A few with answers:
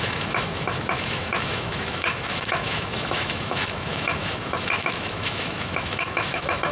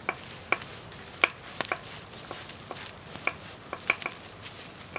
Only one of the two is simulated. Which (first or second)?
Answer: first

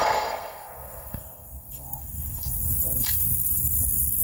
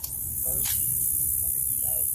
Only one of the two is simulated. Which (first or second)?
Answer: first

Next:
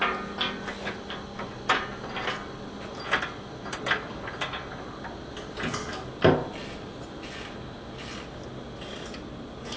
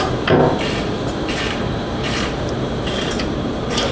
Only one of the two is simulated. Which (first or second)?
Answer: second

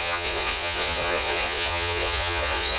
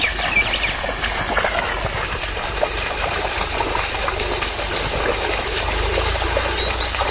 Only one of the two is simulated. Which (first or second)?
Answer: first